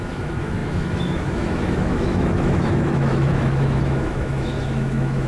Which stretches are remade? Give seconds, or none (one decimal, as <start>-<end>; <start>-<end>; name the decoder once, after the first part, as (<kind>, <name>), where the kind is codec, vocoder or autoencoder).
0.0-5.3 (autoencoder, DAC-VAE)